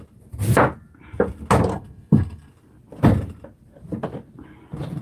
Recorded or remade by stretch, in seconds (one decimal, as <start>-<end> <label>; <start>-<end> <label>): 0.0-1.7 recorded; 1.7-2.5 remade; 2.5-5.0 recorded